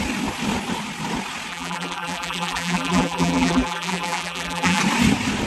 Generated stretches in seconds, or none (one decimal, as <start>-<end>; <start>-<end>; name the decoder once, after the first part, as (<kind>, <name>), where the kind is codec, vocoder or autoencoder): 1.5-4.8 (vocoder, BigVGAN v2)